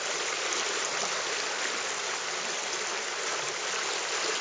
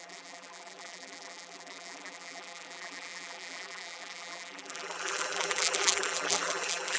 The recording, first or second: first